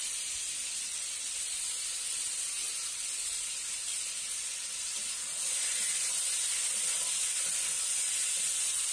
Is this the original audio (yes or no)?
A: yes